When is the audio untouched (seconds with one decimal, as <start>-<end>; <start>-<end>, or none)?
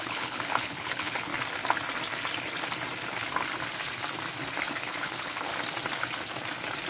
1.3-4.7; 5.5-6.9